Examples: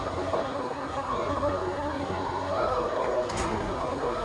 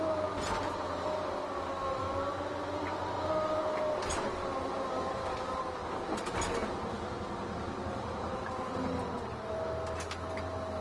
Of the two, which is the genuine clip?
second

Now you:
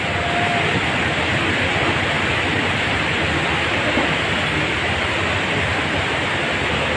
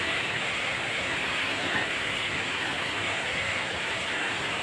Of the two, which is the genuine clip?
first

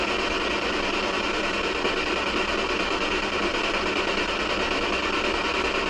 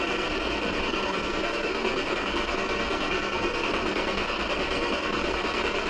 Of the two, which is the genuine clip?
first